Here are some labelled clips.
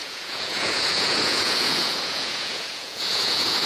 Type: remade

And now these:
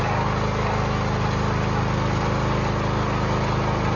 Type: recorded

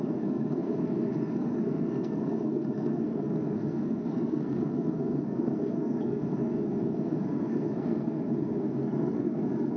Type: remade